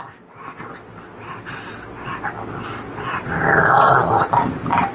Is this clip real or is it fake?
real